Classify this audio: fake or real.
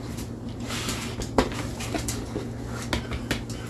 real